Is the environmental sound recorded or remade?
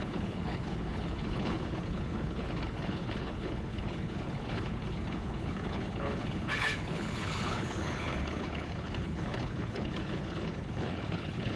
remade